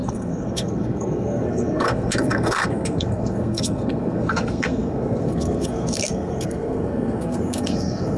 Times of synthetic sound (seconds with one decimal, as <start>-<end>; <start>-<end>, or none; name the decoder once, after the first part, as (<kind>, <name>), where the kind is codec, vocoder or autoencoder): 0.0-8.2 (codec, SNAC)